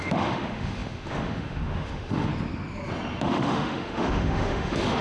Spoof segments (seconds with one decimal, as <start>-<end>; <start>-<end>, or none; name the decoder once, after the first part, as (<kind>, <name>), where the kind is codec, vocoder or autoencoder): 0.0-2.3 (autoencoder, DAC-VAE); 3.2-5.0